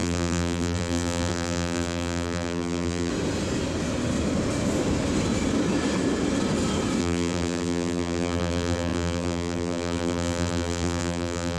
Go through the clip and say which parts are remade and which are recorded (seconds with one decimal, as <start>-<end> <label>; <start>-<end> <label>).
0.0-3.1 remade; 3.1-7.0 recorded; 7.0-11.6 remade